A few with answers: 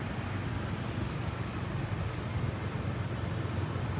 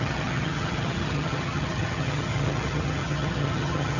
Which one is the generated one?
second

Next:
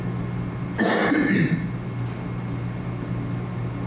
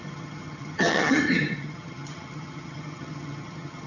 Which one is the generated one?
second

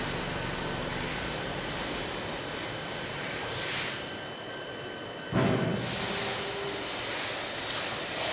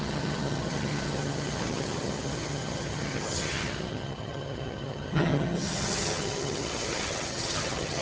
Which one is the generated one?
second